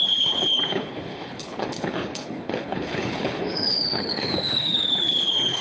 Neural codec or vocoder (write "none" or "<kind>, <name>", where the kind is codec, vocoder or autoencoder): codec, HILCodec